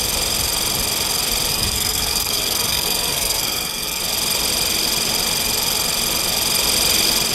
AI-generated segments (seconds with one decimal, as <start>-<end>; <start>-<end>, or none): 1.5-4.0